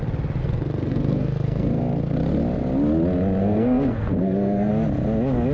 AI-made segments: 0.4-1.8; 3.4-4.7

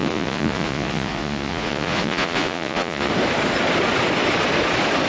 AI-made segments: 0.0-3.1